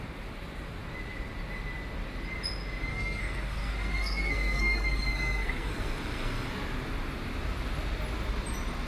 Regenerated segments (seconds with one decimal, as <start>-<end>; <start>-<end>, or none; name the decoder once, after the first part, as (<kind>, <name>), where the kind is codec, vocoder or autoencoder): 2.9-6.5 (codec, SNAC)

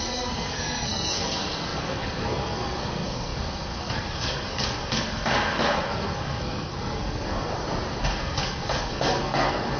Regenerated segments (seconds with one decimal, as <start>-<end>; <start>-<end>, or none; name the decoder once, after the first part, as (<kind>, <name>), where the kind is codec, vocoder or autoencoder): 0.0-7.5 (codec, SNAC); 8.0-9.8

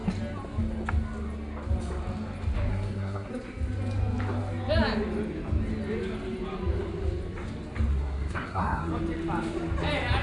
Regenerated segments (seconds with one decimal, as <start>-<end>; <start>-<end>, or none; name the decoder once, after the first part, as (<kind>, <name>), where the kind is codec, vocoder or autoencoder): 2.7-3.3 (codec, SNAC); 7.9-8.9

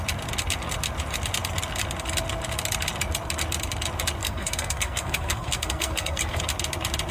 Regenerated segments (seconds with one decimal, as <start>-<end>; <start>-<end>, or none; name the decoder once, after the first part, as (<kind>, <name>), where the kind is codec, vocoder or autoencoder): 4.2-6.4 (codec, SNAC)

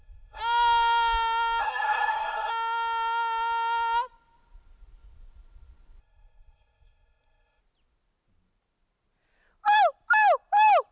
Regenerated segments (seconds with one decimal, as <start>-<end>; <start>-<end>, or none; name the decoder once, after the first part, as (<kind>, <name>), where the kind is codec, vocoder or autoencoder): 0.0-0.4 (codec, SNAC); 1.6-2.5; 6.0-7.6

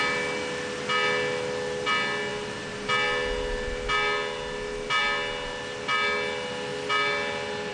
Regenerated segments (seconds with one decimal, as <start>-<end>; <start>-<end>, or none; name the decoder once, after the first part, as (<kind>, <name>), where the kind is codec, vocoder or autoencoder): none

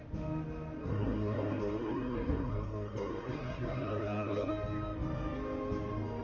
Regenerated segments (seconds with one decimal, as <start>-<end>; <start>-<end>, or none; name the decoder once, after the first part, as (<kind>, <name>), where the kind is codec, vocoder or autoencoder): 0.8-4.5 (codec, SNAC)

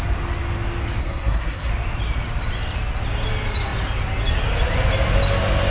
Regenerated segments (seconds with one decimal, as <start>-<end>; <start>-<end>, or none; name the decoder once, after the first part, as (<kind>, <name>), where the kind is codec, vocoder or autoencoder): 1.0-1.7 (codec, SNAC)